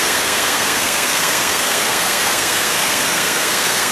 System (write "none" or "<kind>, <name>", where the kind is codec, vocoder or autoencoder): codec, SNAC